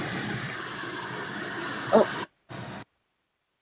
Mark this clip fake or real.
real